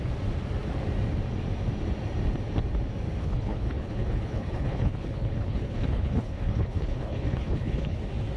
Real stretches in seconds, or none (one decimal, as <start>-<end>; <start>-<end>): 0.0-3.2; 8.0-8.4